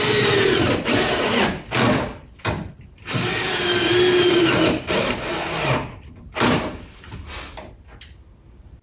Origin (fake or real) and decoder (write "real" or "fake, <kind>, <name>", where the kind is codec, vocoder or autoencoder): real